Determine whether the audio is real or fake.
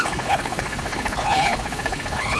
fake